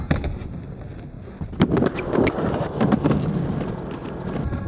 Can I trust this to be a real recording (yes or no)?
yes